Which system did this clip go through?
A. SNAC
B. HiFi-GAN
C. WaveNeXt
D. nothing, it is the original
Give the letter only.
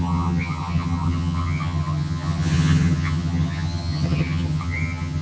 B